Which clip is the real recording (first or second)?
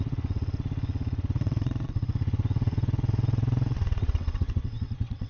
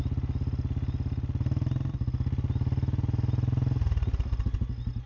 second